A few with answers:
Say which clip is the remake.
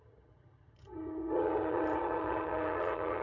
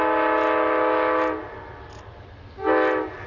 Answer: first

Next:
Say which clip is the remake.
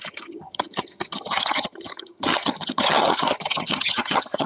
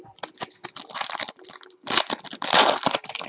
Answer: first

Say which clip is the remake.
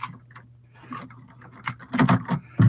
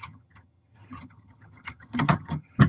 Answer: second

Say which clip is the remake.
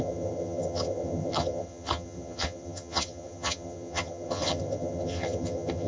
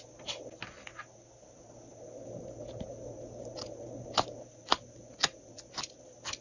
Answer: first